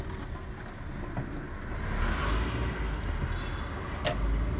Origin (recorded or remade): recorded